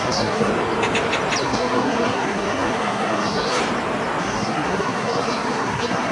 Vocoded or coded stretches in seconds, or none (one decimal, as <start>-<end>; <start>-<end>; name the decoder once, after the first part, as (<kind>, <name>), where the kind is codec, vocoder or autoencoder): 0.0-0.5 (codec, SNAC); 1.4-3.6; 4.2-6.1

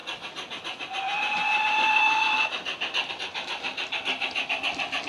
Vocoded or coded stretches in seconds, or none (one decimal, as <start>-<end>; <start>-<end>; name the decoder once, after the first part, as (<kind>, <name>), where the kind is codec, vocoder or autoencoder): none

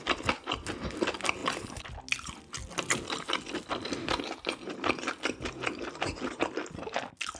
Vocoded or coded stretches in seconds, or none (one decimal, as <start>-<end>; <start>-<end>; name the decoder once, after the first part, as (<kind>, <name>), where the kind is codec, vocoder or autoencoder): none

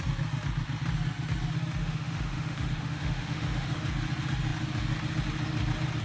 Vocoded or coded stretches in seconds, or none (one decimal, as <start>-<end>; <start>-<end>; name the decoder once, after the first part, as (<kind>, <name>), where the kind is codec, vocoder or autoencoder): 1.8-3.8 (autoencoder, DAC-VAE)

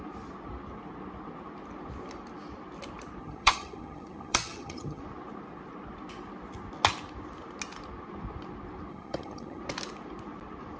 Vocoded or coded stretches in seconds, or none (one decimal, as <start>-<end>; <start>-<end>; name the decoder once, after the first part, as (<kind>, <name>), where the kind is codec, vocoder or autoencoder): 3.2-5.0 (vocoder, HiFi-GAN); 8.9-9.6

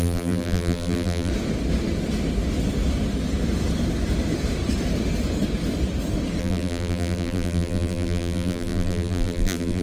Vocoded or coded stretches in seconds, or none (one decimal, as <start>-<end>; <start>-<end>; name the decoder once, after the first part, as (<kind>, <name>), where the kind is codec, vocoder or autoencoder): 0.0-1.3 (vocoder, BigVGAN v2); 6.4-9.8